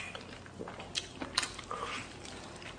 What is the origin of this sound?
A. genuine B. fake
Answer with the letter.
A